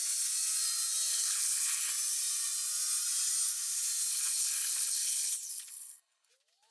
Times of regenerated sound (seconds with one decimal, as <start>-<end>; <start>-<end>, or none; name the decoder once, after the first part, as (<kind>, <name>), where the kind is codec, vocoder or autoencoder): 1.1-1.9 (codec, HILCodec); 4.1-6.3